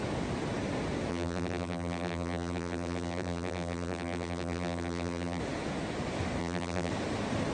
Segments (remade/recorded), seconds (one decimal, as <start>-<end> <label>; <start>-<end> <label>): 0.0-1.1 recorded; 1.1-5.4 remade; 5.4-6.4 recorded; 6.4-6.9 remade; 6.9-7.5 recorded